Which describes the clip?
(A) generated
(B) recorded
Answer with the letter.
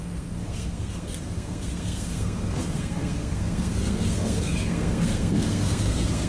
A